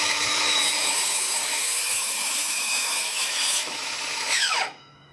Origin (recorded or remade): remade